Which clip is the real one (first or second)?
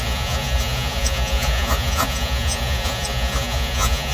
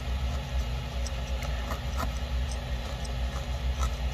second